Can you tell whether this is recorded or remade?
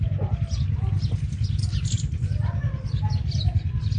recorded